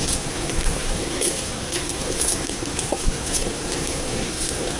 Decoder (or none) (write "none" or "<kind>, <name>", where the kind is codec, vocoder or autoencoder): codec, SNAC